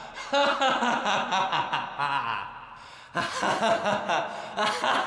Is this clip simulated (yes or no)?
no